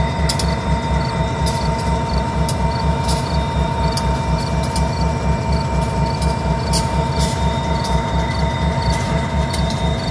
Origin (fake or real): fake